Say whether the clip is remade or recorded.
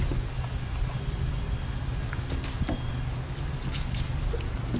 recorded